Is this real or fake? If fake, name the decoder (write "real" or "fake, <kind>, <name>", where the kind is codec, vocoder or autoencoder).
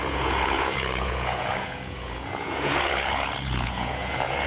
fake, vocoder, Vocos